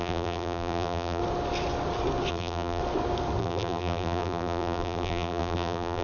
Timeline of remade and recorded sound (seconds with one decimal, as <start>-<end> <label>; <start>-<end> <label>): 0.0-1.2 remade; 1.2-2.3 recorded; 2.3-2.8 remade; 2.8-3.4 recorded; 3.4-6.0 remade